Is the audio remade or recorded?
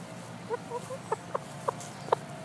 recorded